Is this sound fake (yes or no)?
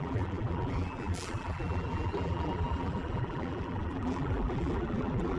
yes